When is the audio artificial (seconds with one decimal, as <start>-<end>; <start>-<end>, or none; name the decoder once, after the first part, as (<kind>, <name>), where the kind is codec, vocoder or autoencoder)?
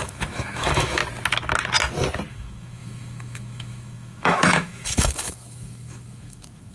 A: 0.0-1.0 (autoencoder, DAC-VAE); 2.3-6.7